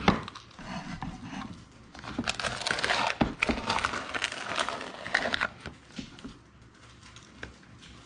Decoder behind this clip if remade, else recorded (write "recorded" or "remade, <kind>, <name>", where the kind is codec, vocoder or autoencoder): recorded